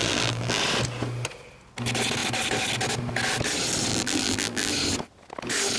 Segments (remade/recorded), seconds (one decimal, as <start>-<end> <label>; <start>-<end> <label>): 0.0-0.6 remade; 0.6-3.9 recorded; 3.9-4.7 remade; 4.7-5.8 recorded